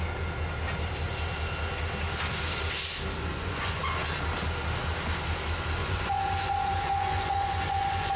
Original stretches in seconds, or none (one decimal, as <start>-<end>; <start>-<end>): 0.0-3.3; 3.8-5.8

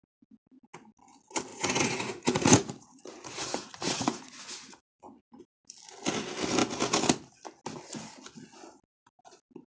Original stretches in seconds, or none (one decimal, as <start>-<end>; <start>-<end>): 0.0-1.5; 5.4-9.8